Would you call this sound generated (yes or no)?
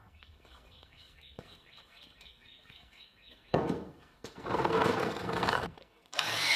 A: yes